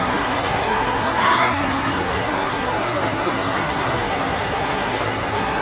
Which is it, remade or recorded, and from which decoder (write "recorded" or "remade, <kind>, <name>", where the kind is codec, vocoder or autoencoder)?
remade, codec, SNAC